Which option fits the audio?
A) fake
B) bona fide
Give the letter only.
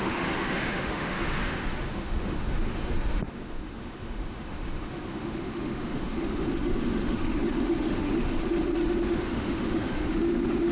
A